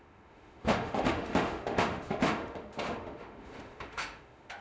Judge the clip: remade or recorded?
remade